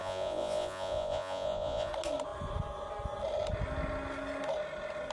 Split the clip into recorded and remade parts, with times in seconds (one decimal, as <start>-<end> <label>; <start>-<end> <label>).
0.0-1.9 remade; 1.9-5.1 recorded